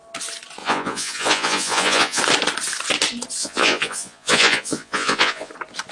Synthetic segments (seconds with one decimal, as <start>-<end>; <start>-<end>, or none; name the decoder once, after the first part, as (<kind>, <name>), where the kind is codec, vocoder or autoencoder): 0.6-2.2 (vocoder, Vocos); 3.4-5.5